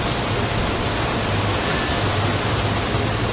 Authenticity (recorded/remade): recorded